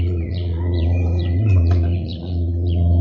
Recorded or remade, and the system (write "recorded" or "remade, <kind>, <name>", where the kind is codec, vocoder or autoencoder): remade, vocoder, Vocos